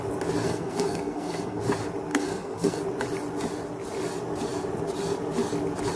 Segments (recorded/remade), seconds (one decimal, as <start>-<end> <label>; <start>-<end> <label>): 0.0-0.4 recorded; 0.4-1.6 remade; 1.6-2.1 recorded; 2.1-2.8 remade; 2.8-6.0 recorded